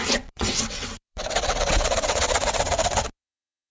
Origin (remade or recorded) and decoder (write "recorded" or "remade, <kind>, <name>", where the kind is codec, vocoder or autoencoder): remade, vocoder, WaveNeXt